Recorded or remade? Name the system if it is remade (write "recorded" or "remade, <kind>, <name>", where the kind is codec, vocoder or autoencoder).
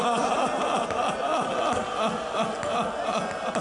recorded